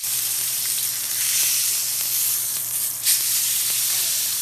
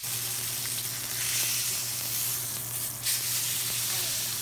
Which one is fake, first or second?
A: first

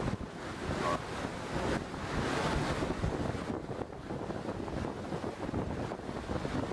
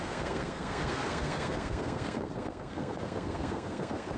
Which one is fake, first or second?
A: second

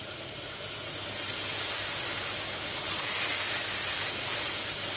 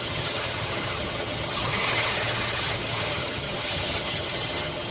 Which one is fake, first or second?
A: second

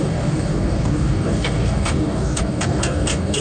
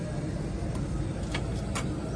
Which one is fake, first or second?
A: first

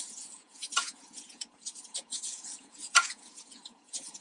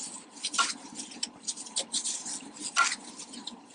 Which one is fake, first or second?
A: first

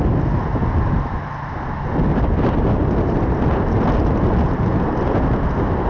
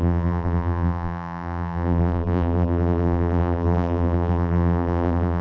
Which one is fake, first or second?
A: second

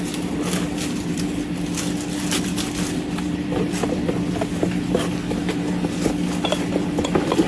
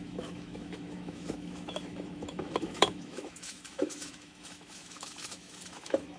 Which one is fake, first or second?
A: second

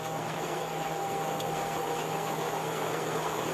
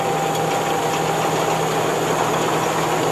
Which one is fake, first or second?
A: first